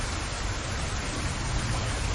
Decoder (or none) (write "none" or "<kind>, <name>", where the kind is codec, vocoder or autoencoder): none